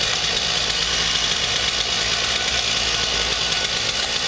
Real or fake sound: real